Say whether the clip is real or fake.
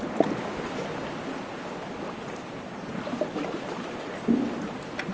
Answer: real